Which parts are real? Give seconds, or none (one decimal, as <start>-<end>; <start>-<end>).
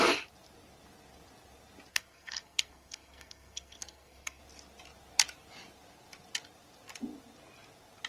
0.0-1.9; 4.4-8.1